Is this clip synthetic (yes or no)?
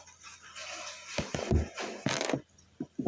no